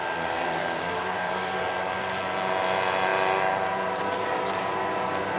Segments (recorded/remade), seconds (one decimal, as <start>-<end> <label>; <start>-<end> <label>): 0.0-0.6 recorded; 0.6-1.6 remade; 1.6-5.4 recorded